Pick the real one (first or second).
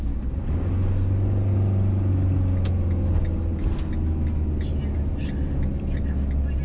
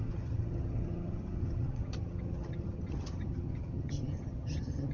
first